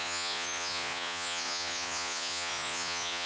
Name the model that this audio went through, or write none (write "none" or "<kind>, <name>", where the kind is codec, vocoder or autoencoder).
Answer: vocoder, Vocos